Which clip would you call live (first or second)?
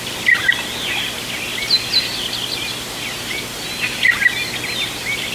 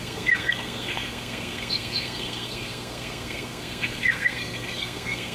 first